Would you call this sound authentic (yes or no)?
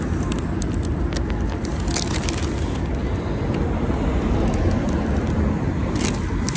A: yes